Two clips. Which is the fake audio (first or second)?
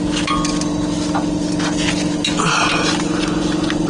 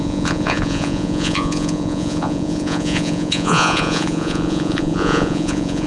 second